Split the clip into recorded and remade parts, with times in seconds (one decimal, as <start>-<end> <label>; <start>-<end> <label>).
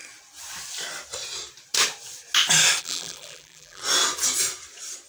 0.0-2.8 recorded; 2.8-3.8 remade; 3.8-5.1 recorded